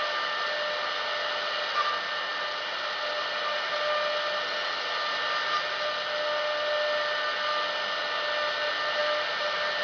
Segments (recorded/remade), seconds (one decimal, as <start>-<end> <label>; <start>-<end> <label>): 0.0-9.8 recorded